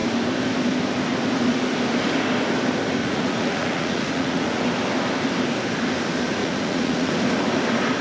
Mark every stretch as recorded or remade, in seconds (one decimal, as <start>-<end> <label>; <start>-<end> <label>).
0.0-3.0 recorded; 3.0-4.6 remade; 4.6-6.4 recorded; 6.4-7.1 remade; 7.1-8.0 recorded

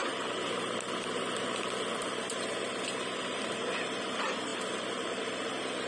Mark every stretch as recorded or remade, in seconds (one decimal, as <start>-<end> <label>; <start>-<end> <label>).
0.0-5.9 recorded